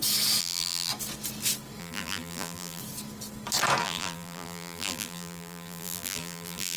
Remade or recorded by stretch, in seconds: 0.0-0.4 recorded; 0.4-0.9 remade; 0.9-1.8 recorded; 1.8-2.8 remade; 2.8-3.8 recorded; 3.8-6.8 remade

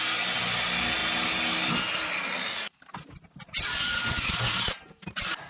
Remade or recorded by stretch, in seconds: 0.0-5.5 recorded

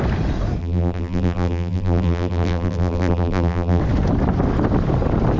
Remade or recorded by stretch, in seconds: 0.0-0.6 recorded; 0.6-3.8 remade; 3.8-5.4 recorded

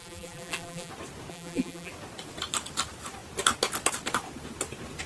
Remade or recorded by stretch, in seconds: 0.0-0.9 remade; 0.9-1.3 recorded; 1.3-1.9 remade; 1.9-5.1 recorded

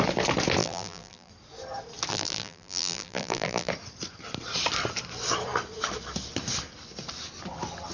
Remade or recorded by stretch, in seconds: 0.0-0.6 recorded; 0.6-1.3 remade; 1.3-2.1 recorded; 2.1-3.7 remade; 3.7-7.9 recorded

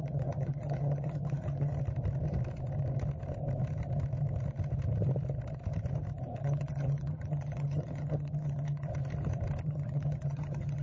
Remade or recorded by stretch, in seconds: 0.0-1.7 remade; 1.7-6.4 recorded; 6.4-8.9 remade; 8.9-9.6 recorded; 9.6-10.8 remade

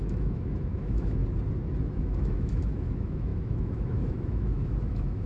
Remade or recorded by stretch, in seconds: 0.0-1.2 remade; 1.2-1.8 recorded; 1.8-5.3 remade

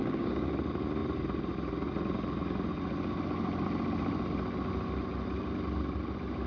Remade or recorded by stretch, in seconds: 0.0-0.5 remade; 0.5-6.5 recorded